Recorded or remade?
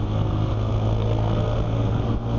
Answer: remade